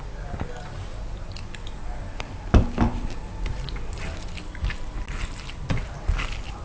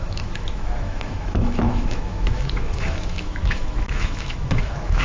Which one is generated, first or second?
second